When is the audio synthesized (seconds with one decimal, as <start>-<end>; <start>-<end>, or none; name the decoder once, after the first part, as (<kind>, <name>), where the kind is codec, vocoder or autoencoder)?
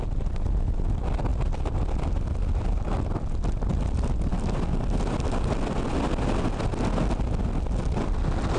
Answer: none